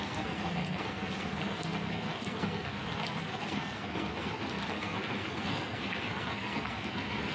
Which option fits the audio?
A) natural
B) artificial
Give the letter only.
B